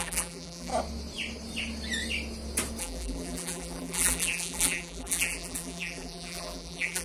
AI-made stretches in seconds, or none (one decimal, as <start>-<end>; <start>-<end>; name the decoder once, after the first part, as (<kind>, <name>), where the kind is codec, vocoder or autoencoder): 0.0-0.7 (vocoder, BigVGAN v2); 2.8-7.0